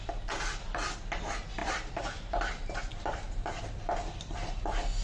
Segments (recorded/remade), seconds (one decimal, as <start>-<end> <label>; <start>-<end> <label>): 0.0-1.6 recorded; 1.6-4.6 remade; 4.6-5.0 recorded